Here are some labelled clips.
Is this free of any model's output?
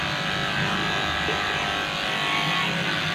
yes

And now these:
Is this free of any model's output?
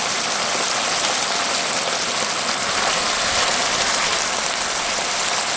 yes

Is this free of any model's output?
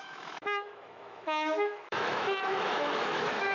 no